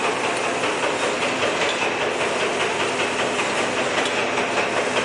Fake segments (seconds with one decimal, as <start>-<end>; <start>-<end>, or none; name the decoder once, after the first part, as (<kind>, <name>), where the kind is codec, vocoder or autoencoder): none